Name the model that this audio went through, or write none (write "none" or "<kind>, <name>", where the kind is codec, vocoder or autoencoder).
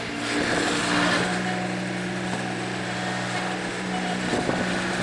none